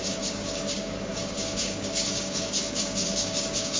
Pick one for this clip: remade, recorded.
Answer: remade